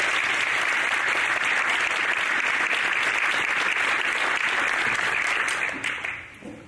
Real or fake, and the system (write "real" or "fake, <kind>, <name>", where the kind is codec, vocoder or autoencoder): real